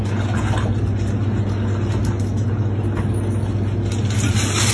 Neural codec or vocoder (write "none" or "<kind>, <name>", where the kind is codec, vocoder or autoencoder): none